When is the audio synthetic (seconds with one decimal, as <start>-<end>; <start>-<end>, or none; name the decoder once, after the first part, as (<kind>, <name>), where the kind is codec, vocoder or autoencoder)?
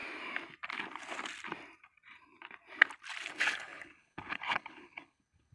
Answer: 3.3-5.5 (codec, HILCodec)